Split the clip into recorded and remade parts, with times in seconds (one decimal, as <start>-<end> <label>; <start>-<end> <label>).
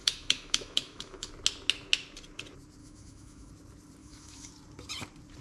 0.0-1.3 remade; 1.3-2.8 recorded; 2.8-3.5 remade; 3.5-4.0 recorded; 4.0-4.5 remade; 4.5-5.4 recorded